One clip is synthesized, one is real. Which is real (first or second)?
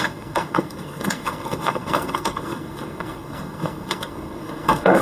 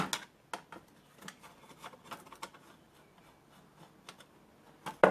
second